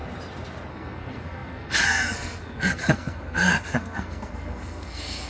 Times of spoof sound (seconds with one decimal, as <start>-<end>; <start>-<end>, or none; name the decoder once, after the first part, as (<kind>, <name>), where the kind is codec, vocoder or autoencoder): 0.7-5.3 (codec, SNAC)